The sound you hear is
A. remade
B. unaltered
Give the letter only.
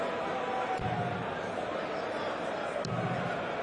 B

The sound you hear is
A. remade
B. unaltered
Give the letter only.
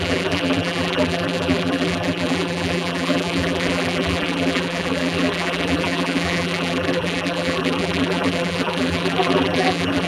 A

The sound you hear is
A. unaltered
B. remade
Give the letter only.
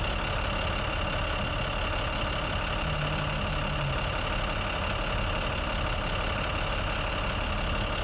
A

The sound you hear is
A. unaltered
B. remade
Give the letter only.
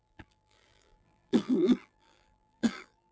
B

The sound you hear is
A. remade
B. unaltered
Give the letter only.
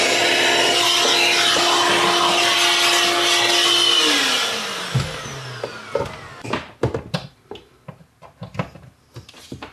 B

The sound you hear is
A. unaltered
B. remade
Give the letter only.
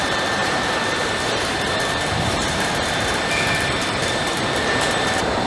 B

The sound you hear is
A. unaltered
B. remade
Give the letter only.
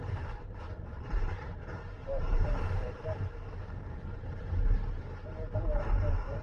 B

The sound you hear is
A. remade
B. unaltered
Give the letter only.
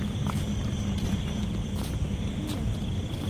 B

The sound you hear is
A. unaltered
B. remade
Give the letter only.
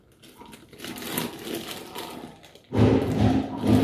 A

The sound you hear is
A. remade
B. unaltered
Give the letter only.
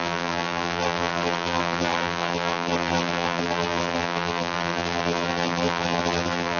A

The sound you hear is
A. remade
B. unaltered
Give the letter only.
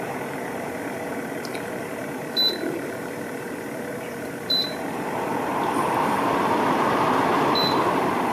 A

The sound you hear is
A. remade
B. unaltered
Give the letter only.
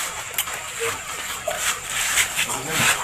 A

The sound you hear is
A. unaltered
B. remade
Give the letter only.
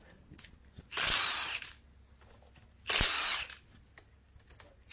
A